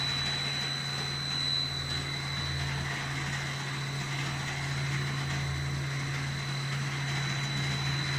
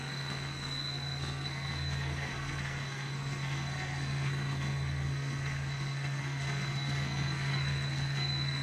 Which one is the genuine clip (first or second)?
first